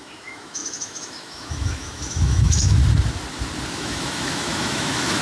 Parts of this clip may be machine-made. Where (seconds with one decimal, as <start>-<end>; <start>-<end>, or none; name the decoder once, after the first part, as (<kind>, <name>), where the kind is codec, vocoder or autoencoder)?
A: 0.0-2.8 (autoencoder, DAC-VAE); 3.7-5.2